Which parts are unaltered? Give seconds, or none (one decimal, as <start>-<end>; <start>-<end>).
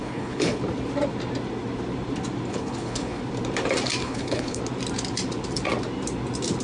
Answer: 0.6-2.5; 3.2-4.0; 4.6-6.6